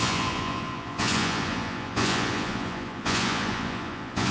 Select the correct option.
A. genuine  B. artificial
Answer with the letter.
B